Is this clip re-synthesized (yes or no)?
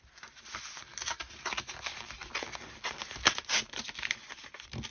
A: no